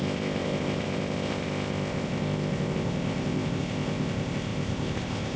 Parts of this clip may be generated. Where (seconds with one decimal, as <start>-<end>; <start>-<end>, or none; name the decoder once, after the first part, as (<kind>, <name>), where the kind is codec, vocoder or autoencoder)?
0.0-5.4 (codec, ZipCodec)